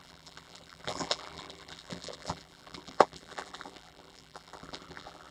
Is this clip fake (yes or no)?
yes